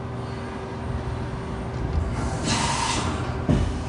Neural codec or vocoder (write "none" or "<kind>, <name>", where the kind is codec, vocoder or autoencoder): none